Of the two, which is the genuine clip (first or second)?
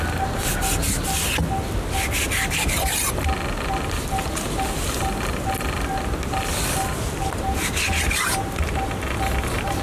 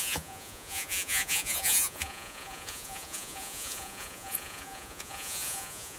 first